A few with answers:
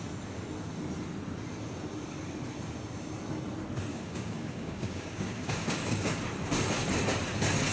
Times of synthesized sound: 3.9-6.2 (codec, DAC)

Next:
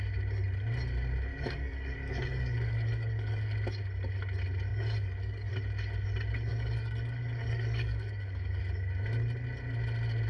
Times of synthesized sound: 1.3-3.4 (codec, DAC); 4.7-5.5; 6.5-8.6